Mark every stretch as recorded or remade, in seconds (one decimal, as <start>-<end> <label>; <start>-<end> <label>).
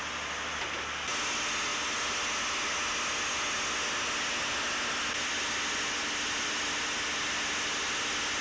0.0-8.4 recorded